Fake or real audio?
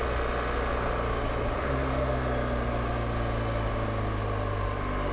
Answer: real